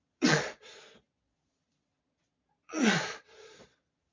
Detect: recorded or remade remade